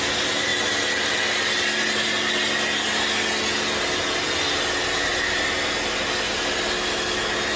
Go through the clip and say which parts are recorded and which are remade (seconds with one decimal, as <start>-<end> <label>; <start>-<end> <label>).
0.0-7.6 recorded